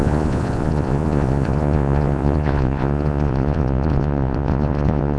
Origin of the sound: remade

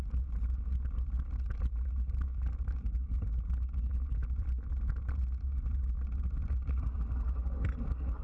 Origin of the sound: recorded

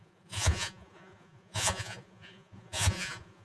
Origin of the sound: remade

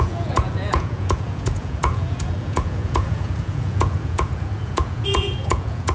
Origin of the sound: remade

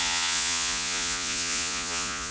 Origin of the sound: remade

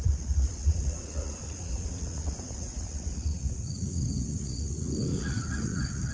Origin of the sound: remade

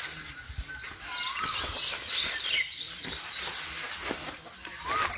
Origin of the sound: recorded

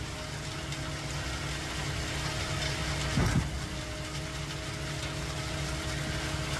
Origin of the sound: recorded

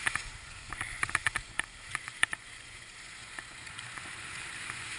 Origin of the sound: remade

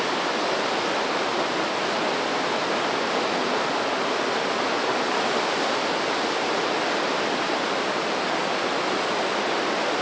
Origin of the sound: recorded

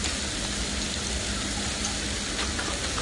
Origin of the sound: recorded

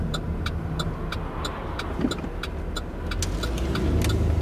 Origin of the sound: recorded